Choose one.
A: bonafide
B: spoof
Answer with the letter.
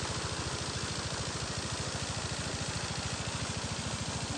A